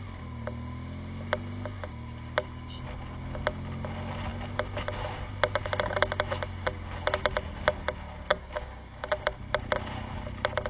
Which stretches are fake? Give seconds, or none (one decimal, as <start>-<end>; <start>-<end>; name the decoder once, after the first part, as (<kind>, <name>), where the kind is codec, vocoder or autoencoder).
8.3-9.1 (codec, DAC)